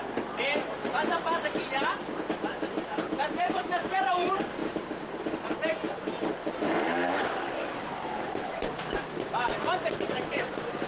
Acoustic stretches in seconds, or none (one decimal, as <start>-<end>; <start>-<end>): 4.6-6.5